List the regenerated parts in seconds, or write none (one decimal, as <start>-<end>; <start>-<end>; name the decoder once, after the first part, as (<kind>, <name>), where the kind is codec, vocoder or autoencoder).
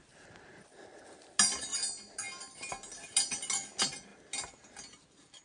none